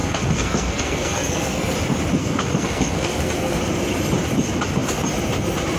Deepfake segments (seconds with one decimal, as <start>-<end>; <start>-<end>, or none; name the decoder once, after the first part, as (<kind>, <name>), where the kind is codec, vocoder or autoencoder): 0.0-1.7 (codec, SNAC); 2.2-3.6

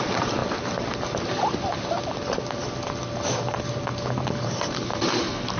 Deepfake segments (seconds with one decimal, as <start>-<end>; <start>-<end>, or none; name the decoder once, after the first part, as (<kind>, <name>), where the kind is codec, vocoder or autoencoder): none

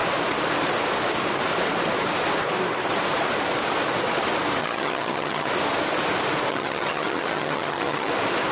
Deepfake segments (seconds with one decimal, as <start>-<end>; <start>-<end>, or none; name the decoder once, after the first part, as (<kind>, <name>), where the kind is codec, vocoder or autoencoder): 4.6-5.5 (vocoder, HiFi-GAN); 6.5-8.1

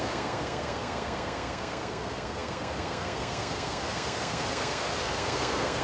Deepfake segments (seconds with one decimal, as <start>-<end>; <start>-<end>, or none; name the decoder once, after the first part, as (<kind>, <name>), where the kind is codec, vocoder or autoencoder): 0.0-5.8 (codec, SNAC)

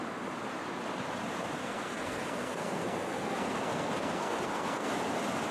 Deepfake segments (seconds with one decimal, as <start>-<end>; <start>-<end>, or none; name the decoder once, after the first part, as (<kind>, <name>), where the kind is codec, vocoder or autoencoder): 1.6-4.9 (codec, SNAC)

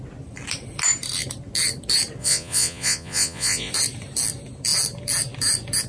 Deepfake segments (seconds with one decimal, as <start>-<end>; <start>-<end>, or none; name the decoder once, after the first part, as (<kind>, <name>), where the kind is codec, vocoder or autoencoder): 2.2-3.7 (vocoder, Vocos)

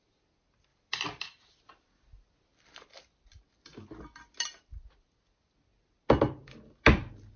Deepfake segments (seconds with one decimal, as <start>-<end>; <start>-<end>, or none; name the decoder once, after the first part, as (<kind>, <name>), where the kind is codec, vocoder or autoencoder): none